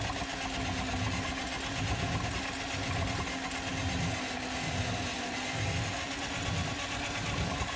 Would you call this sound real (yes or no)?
yes